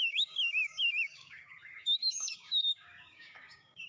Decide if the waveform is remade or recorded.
remade